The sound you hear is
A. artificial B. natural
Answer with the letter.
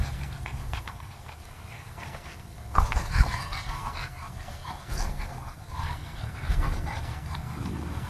A